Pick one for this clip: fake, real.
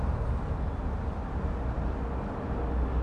real